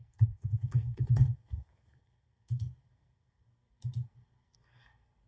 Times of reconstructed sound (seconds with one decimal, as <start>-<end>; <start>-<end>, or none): 0.0-5.3